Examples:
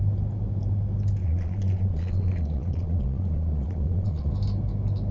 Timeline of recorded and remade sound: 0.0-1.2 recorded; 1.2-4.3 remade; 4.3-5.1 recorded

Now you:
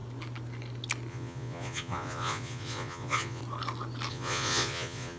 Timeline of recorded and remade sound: 0.0-1.1 recorded; 1.1-3.4 remade; 3.4-4.1 recorded; 4.1-5.2 remade

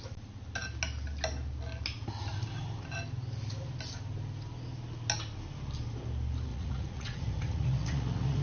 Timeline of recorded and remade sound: 0.0-6.5 recorded; 6.5-8.4 remade